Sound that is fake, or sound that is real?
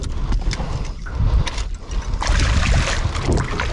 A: real